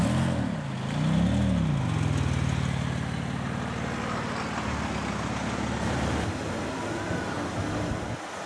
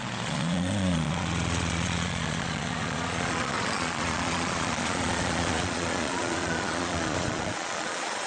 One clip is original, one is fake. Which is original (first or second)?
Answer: first